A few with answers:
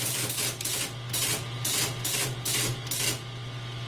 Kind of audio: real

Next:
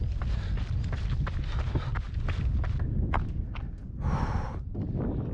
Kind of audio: real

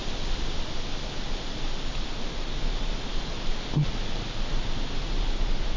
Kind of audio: real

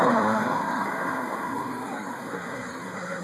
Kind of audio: fake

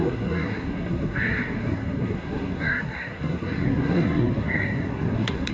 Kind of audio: fake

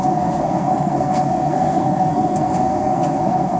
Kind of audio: fake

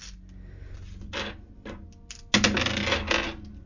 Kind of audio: real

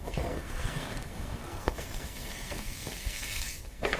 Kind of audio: fake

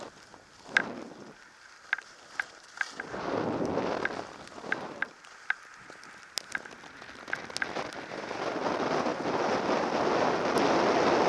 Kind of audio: real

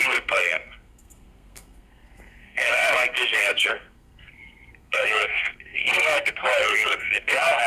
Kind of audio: fake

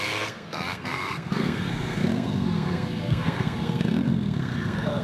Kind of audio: fake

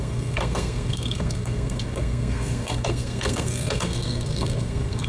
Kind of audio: fake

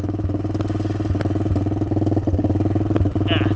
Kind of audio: real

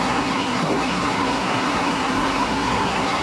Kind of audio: fake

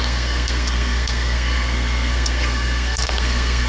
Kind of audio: fake